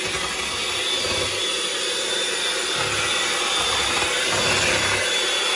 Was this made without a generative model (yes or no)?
yes